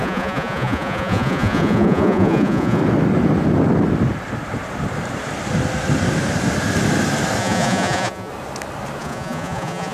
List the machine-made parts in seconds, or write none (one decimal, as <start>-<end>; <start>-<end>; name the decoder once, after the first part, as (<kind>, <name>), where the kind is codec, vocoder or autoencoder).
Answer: 0.0-2.8 (vocoder, Vocos); 7.4-8.3; 9.0-9.9